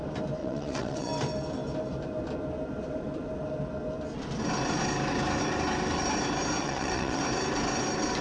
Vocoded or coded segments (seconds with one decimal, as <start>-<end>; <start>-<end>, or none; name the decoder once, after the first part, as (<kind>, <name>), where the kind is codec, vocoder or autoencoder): 0.4-1.1 (vocoder, WaveNeXt); 6.6-7.2